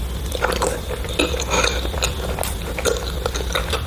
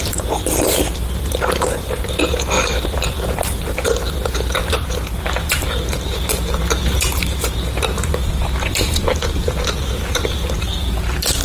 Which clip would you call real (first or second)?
first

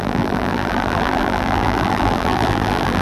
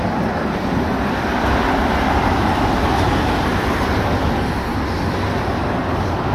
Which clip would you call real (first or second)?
second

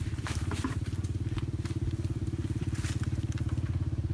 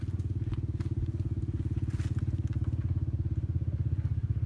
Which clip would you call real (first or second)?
second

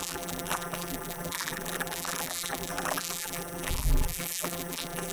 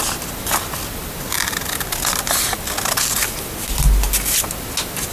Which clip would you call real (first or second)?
second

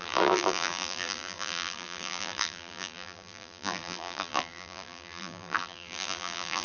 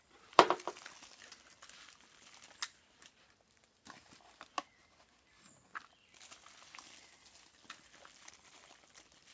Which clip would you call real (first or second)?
second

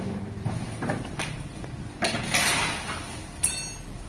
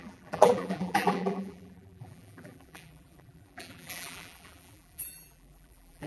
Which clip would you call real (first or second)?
first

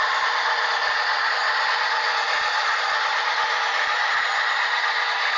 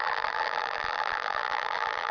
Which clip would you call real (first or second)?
first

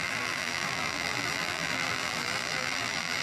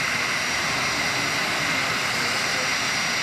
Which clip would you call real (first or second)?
second